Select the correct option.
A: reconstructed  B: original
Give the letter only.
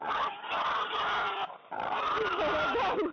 B